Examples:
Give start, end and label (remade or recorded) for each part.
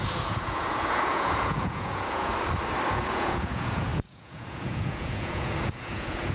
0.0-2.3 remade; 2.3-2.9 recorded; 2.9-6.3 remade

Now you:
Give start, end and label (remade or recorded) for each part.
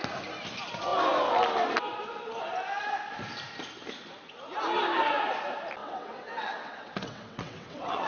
0.0-5.8 recorded; 5.8-8.1 remade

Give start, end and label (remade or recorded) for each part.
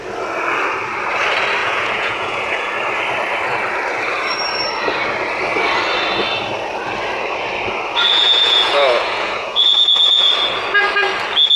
0.0-1.6 recorded; 1.6-2.7 remade; 2.7-8.1 recorded; 8.1-10.3 remade; 10.3-11.6 recorded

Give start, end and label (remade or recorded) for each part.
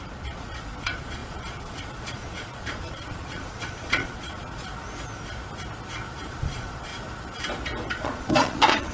0.0-4.7 remade; 4.7-6.2 recorded; 6.2-6.9 remade; 6.9-7.9 recorded; 7.9-8.9 remade